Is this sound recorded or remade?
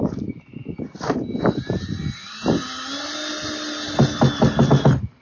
recorded